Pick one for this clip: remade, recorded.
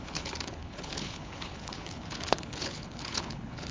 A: remade